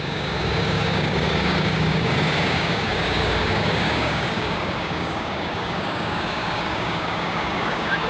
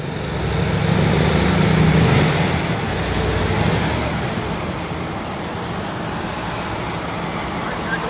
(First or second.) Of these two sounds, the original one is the second